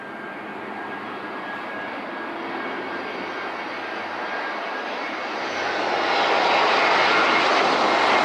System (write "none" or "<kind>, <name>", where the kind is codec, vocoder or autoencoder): none